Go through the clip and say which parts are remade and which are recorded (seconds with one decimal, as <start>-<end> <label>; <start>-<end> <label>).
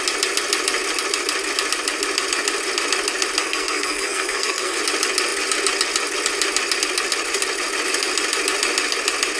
0.0-3.4 recorded; 3.4-4.8 remade; 4.8-9.4 recorded